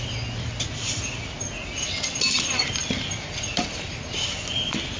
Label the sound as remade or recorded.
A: recorded